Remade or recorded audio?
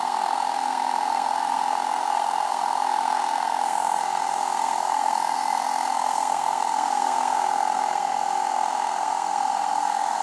remade